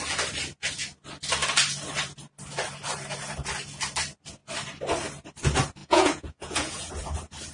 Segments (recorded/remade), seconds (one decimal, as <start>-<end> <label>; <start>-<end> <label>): 0.0-5.8 recorded; 5.8-6.9 remade; 6.9-7.5 recorded